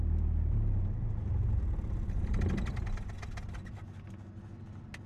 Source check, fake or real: real